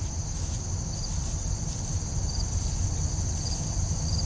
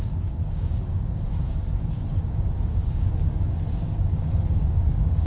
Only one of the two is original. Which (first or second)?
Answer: first